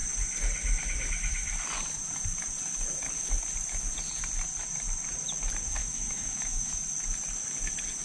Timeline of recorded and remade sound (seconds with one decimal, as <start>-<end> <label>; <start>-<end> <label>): 0.0-5.8 recorded; 5.8-6.7 remade; 6.7-8.0 recorded